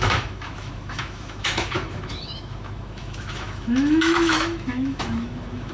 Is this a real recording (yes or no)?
no